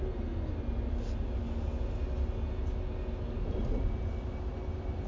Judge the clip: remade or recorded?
recorded